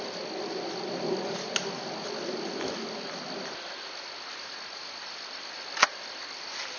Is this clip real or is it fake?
real